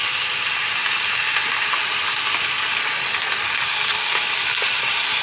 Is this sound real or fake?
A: real